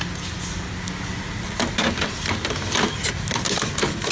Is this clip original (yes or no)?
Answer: yes